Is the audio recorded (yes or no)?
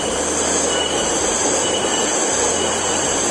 yes